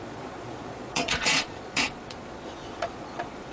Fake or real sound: fake